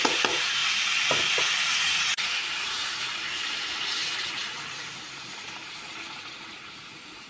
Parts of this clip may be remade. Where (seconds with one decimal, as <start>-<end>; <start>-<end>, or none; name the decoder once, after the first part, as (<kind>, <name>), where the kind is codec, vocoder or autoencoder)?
0.0-0.6 (vocoder, Vocos); 1.8-7.3